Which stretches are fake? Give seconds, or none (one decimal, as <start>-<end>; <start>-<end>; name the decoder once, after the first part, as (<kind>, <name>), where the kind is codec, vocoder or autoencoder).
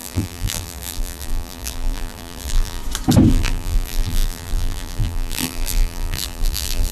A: 0.0-2.8 (vocoder, BigVGAN v2); 3.3-6.9